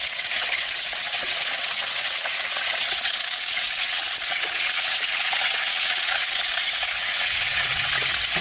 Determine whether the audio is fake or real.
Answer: fake